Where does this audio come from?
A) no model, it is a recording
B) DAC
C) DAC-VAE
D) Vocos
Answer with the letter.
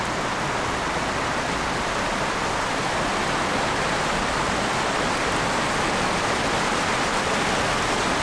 A